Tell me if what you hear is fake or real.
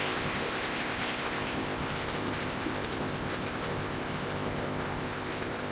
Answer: fake